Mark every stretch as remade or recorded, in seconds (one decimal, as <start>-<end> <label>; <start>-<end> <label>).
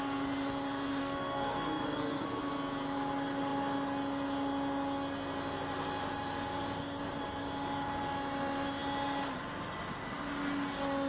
0.0-1.0 recorded; 1.0-2.4 remade; 2.4-11.1 recorded